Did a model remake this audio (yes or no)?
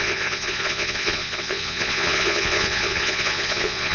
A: yes